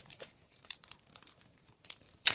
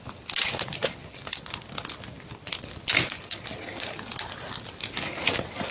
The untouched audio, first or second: second